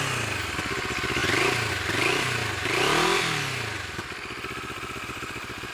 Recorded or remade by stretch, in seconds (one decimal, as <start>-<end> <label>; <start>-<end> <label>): 0.0-5.7 recorded